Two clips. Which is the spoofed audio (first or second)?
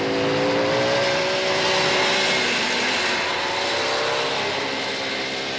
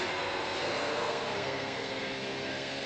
second